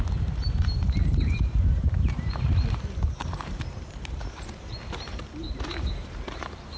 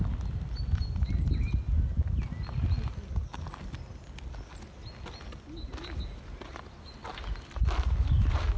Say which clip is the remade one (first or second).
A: first